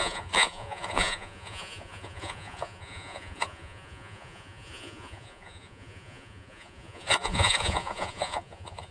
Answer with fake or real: fake